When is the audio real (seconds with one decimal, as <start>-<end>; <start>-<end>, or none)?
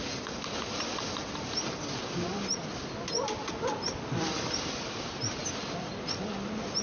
0.0-6.8